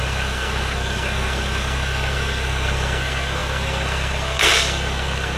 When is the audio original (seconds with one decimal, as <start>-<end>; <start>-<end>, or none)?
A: none